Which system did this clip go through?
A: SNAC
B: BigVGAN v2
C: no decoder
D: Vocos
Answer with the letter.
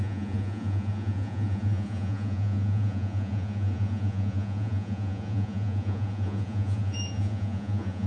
D